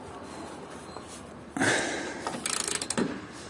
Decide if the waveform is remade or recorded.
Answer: recorded